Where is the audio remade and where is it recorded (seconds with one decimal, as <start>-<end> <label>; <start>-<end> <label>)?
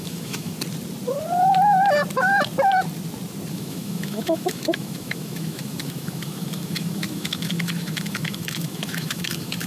0.0-0.5 remade; 0.5-3.5 recorded; 3.5-9.7 remade